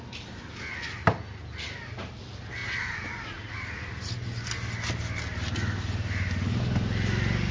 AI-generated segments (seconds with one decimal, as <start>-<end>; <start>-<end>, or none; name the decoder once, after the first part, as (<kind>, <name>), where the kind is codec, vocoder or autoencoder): none

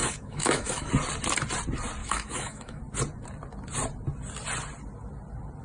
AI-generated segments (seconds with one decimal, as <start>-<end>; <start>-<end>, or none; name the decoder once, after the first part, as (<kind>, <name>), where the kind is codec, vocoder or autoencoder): 0.0-0.9 (autoencoder, DAC-VAE); 2.0-2.8